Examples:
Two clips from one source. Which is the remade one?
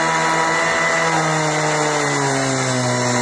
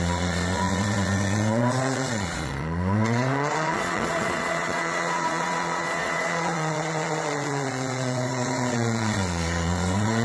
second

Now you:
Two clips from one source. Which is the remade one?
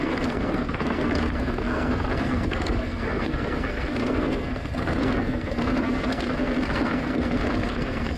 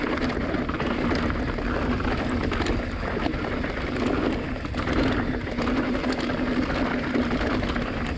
first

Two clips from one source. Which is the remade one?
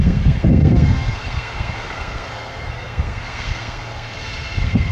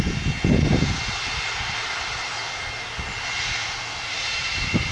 first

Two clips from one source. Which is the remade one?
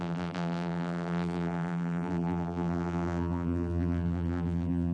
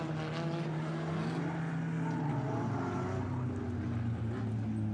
first